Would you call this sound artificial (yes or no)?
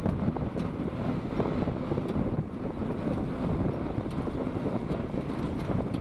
no